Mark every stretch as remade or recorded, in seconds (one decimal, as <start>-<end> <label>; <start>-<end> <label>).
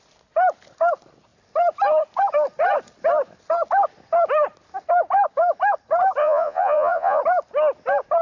0.0-6.2 recorded; 6.2-7.2 remade; 7.2-8.2 recorded